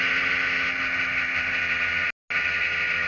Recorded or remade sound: recorded